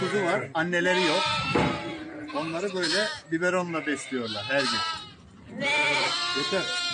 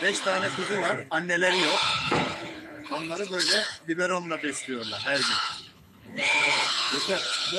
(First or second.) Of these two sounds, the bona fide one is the first